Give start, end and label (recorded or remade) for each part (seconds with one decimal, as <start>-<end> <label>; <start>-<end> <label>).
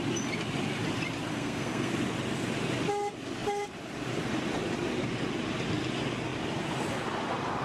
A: 0.0-1.3 recorded; 1.3-1.9 remade; 1.9-7.6 recorded